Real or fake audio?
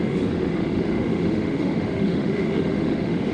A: fake